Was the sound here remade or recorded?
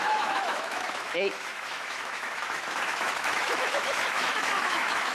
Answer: remade